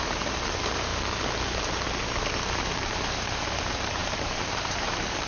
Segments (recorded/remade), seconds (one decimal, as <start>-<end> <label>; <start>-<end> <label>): 0.0-0.9 remade; 0.9-2.2 recorded; 2.2-5.3 remade